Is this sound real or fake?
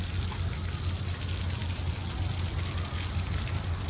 real